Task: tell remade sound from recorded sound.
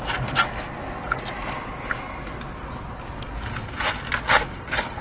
recorded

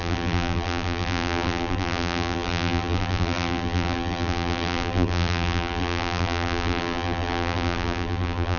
remade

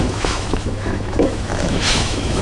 remade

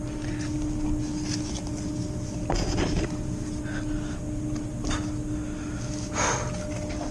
recorded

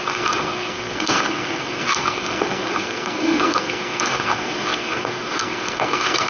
remade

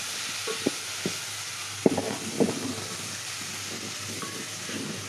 recorded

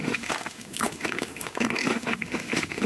remade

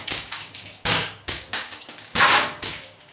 remade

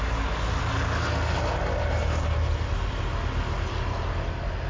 recorded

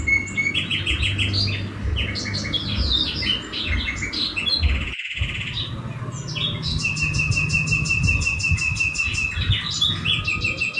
recorded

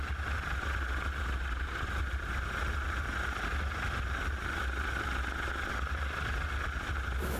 recorded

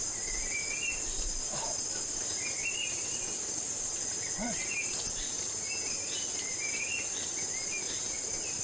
recorded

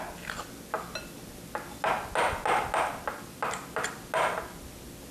recorded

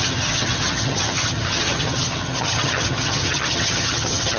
remade